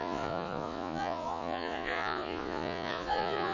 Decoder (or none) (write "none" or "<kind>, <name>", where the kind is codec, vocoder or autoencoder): vocoder, Vocos